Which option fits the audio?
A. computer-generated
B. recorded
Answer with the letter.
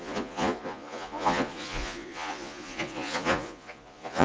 A